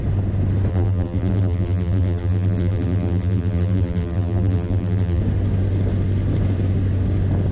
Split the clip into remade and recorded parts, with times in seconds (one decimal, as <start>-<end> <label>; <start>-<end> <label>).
0.0-0.7 recorded; 0.7-5.2 remade; 5.2-7.5 recorded